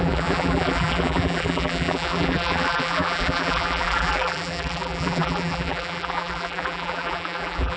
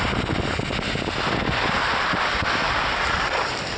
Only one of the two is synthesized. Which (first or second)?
first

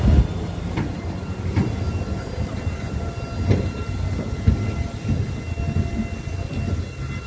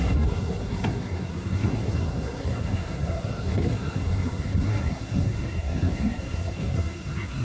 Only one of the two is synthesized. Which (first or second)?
second